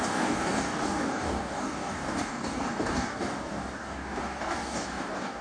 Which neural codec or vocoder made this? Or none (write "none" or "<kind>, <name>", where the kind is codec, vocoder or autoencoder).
codec, DAC